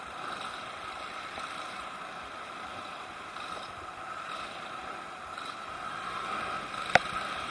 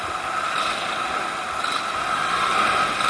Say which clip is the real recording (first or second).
second